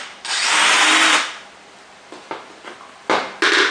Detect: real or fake real